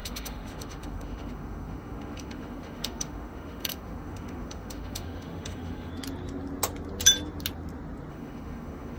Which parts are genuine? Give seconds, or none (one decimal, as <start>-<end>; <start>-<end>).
5.9-8.1